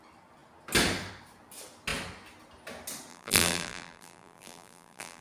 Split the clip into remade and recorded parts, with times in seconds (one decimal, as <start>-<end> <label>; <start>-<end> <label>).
0.0-3.1 recorded; 3.1-5.2 remade